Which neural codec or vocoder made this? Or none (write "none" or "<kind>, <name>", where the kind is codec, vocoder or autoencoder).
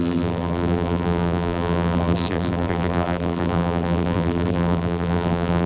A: vocoder, BigVGAN v2